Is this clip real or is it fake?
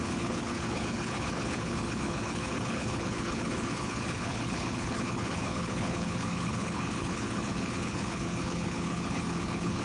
fake